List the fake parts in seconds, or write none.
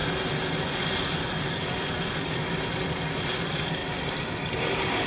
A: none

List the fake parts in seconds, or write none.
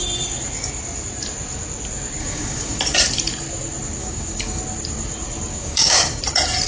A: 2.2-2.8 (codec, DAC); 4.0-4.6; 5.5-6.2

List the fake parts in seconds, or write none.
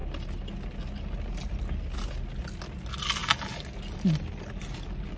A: none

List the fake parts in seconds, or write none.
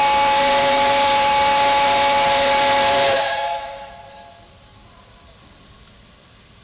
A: 3.1-3.9 (codec, DAC)